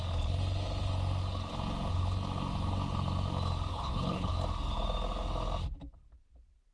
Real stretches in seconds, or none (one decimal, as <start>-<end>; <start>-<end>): 0.0-3.7; 4.3-6.7